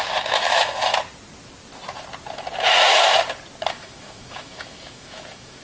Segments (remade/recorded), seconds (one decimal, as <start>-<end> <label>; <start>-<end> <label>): 0.0-0.9 remade; 0.9-3.7 recorded; 3.7-5.6 remade